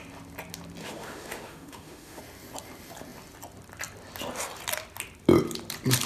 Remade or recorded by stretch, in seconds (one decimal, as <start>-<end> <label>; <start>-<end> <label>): 0.0-0.8 recorded; 0.8-2.2 remade; 2.2-6.1 recorded